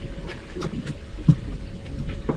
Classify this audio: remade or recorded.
recorded